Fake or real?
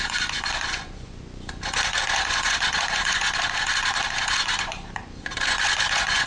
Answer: fake